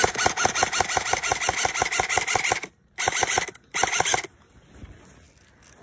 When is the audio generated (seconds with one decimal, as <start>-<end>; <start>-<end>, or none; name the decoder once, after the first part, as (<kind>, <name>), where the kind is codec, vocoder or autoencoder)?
none